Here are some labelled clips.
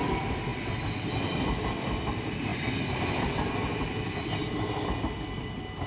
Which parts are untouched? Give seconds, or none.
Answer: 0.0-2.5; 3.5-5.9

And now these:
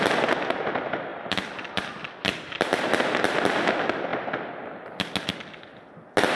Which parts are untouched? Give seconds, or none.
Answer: 0.0-1.1; 2.9-6.4

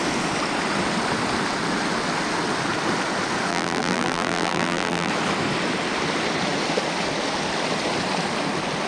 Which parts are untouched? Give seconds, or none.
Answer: 0.0-3.5; 5.1-8.9

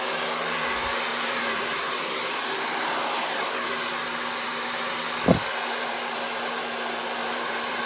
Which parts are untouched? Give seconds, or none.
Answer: 0.0-1.1; 2.0-7.2

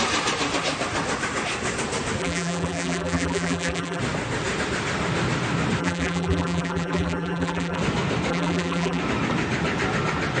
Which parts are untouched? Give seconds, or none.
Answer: 0.0-2.2; 4.0-5.8; 7.8-8.3; 9.0-10.4

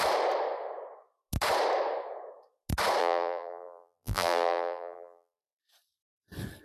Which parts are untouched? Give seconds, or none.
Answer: 0.0-3.0; 5.4-6.6

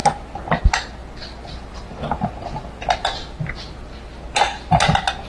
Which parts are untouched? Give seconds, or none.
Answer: 0.0-5.3